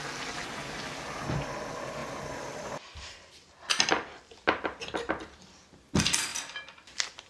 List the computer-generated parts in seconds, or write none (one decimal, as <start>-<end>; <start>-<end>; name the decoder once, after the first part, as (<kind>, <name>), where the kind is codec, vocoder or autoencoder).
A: 2.0-5.7 (vocoder, BigVGAN v2); 6.3-7.3